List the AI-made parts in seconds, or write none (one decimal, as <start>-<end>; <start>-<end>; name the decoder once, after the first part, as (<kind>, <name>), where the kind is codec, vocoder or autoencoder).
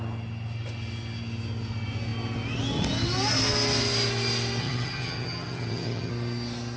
4.6-6.1 (vocoder, HiFi-GAN)